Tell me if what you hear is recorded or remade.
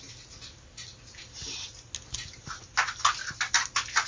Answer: recorded